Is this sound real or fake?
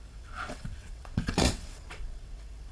fake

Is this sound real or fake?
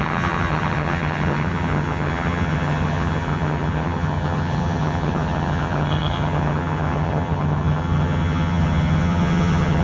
fake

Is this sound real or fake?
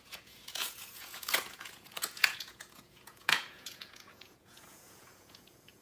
fake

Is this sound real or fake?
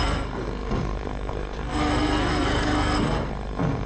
fake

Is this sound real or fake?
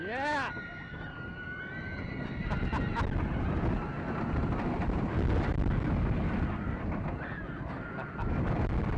real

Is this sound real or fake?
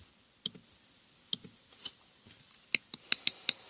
real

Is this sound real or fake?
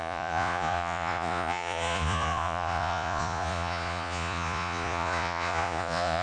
fake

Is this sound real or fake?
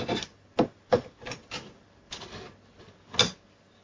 real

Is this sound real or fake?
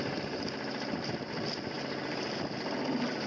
real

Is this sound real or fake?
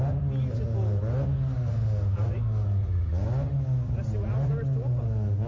real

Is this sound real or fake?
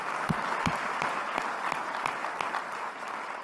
fake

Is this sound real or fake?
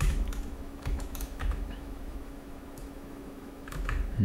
fake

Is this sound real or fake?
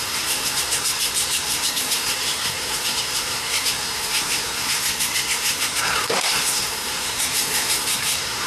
fake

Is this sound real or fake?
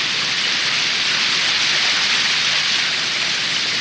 real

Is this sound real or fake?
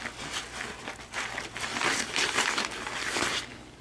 real